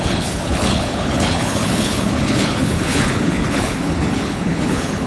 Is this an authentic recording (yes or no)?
no